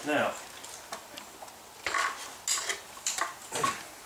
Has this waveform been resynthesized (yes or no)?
no